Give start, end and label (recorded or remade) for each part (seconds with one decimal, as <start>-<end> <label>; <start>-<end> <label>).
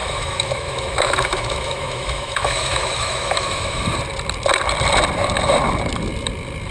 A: 0.0-3.8 remade; 3.8-6.7 recorded